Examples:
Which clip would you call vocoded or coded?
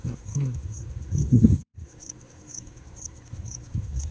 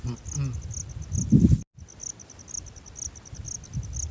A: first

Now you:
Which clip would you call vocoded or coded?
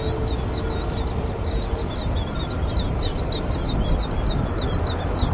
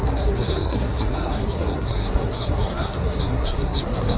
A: second